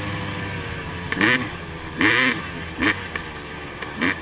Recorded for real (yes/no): yes